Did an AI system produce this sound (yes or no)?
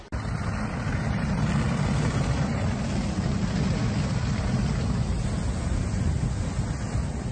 no